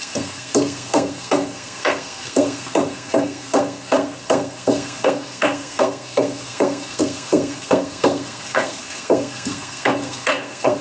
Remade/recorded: remade